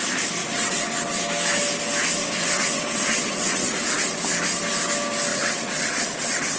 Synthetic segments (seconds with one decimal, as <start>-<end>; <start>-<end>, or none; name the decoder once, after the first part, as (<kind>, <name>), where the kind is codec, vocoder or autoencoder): 0.4-1.2 (vocoder, WaveNeXt); 2.2-3.7; 5.3-6.6